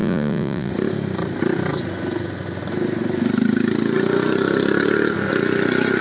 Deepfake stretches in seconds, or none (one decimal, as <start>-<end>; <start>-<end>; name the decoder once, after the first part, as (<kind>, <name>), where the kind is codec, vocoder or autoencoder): 0.0-0.7 (vocoder, Vocos)